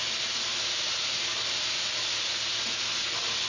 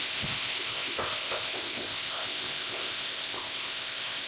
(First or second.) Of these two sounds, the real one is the first